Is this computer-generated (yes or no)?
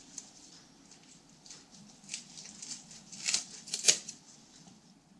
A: yes